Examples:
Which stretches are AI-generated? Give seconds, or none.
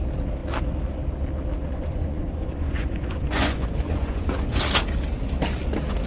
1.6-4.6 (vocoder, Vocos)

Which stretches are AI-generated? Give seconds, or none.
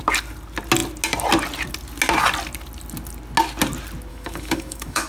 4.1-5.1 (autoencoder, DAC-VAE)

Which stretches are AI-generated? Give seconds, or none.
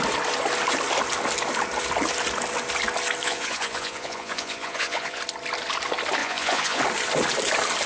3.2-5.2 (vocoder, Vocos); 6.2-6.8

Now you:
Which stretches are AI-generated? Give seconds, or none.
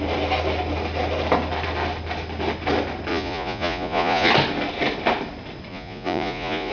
3.1-4.3 (vocoder, Vocos); 5.7-6.7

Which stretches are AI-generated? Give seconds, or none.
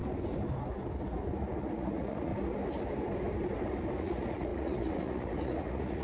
1.6-2.3 (vocoder, Vocos); 4.0-6.0